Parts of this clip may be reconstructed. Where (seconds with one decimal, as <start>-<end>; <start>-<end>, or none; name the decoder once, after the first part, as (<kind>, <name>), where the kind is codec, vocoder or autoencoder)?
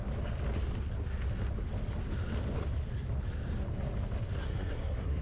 4.4-5.2 (codec, SNAC)